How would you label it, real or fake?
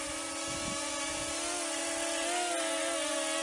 real